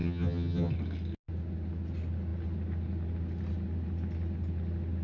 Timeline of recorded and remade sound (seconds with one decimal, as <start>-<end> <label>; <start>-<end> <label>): 0.0-0.7 remade; 0.7-5.0 recorded